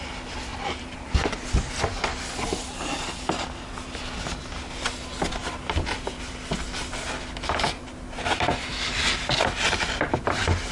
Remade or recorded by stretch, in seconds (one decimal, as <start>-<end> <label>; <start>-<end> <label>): 0.0-10.7 recorded